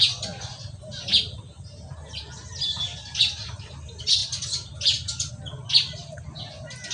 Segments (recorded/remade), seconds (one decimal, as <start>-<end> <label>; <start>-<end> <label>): 0.0-6.9 recorded